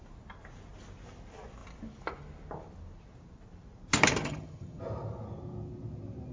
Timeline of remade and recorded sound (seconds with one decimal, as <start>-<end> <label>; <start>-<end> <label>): 0.0-4.2 recorded; 4.2-4.8 remade; 4.8-6.3 recorded